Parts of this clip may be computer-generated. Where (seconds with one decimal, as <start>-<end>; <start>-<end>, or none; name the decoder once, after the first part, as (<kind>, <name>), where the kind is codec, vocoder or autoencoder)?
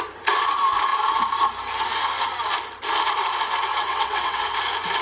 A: 3.7-4.6 (vocoder, WaveNeXt)